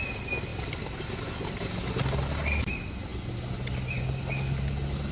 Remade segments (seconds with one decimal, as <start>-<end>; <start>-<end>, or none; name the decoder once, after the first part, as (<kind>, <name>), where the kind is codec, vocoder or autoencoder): none